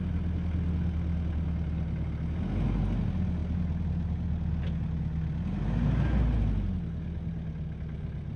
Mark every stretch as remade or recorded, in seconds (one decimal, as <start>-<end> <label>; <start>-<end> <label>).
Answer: 0.0-8.4 recorded